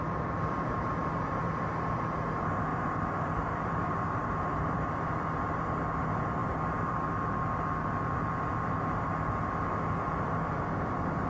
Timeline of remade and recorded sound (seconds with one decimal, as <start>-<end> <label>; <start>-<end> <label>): 0.0-1.0 recorded; 1.0-1.5 remade; 1.5-2.7 recorded; 2.7-5.2 remade; 5.2-11.3 recorded